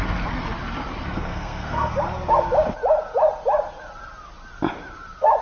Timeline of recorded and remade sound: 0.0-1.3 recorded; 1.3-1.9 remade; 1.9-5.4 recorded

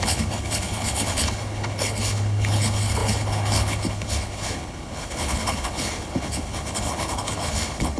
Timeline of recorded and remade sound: 0.0-8.0 remade

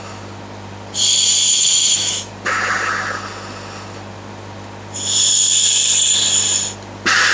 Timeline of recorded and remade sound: 0.0-1.5 recorded; 1.5-2.3 remade; 2.3-7.3 recorded

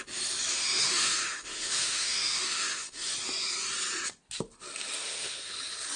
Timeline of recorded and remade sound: 0.0-0.5 recorded; 0.5-3.1 remade; 3.1-5.0 recorded; 5.0-5.5 remade; 5.5-6.0 recorded

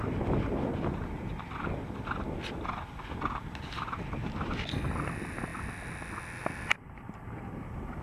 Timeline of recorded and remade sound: 0.0-8.0 recorded